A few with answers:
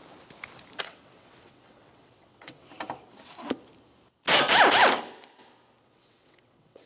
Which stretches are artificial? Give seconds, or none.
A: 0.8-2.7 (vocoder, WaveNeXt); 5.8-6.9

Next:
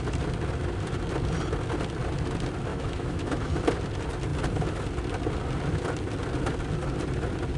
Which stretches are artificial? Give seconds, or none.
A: 2.7-3.5 (autoencoder, DAC-VAE)